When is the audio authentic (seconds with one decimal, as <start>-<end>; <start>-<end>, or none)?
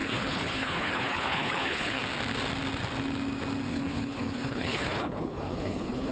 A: 2.0-3.7